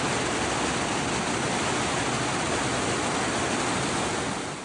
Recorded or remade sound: recorded